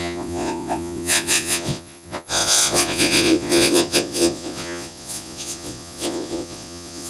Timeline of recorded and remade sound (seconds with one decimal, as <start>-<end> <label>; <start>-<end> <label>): 0.0-7.1 remade